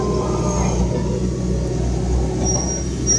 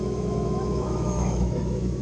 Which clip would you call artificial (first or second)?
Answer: second